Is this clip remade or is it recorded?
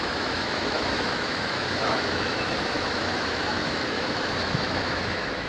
remade